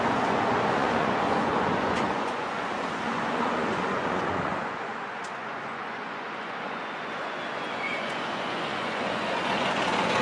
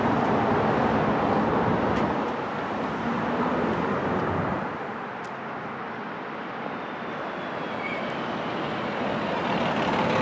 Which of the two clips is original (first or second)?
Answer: second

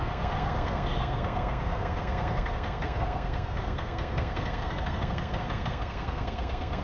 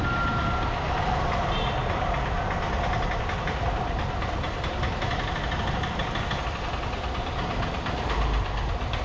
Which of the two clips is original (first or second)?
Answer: second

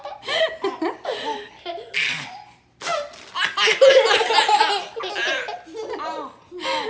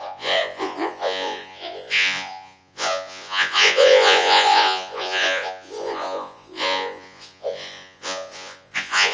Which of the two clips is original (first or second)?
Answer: first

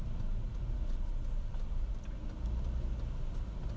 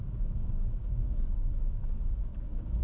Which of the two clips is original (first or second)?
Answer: first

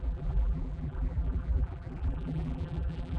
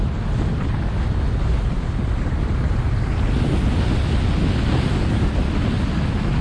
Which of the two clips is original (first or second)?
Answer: second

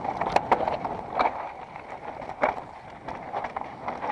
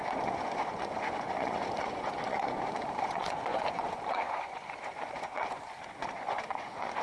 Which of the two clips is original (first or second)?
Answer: first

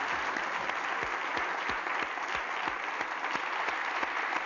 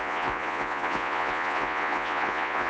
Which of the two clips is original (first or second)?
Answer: first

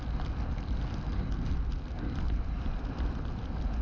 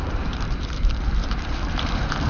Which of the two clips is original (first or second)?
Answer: first